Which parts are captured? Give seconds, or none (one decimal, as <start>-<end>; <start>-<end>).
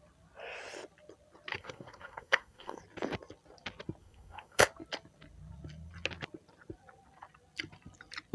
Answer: 0.0-1.5; 2.8-4.0; 4.6-8.3